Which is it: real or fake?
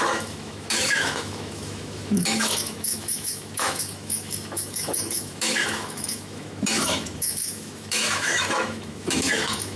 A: fake